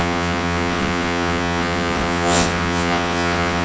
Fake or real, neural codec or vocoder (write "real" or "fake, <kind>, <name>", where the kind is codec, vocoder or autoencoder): fake, vocoder, WaveNeXt